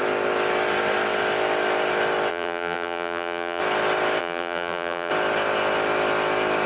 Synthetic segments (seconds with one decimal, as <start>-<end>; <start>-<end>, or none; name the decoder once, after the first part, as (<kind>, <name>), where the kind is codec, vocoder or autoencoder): 2.3-3.6 (vocoder, BigVGAN v2); 4.2-5.1